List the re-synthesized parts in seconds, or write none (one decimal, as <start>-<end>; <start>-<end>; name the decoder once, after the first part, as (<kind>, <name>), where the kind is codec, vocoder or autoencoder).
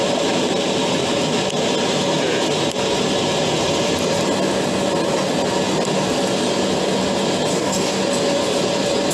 7.5-8.0 (codec, DAC)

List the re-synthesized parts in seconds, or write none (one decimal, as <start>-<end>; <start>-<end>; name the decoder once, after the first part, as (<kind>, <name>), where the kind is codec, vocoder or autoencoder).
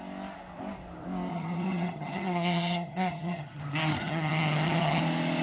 1.3-3.6 (vocoder, HiFi-GAN); 4.0-5.0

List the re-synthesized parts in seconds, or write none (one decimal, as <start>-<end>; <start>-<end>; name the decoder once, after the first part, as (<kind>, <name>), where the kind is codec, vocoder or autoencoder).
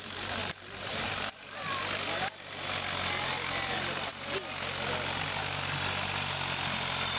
0.4-1.6 (vocoder, BigVGAN v2)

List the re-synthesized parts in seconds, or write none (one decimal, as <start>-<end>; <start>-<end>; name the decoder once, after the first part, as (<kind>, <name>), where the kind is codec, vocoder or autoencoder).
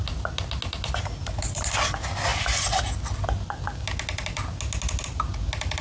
none